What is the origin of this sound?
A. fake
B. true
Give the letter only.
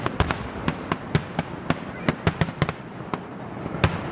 B